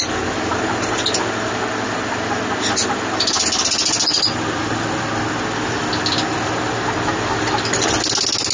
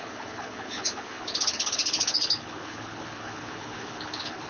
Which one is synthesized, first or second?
second